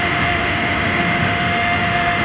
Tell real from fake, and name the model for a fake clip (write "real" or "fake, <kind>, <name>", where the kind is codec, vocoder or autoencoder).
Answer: fake, autoencoder, DAC-VAE